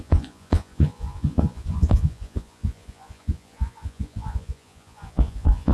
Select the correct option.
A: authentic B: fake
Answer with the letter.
B